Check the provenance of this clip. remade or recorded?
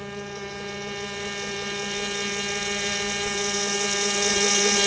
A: recorded